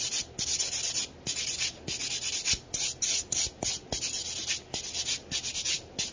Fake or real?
real